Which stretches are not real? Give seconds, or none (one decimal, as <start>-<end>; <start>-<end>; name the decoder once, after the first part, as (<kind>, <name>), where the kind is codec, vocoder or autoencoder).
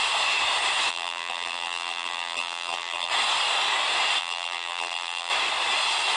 0.9-3.1 (vocoder, BigVGAN v2); 4.2-5.3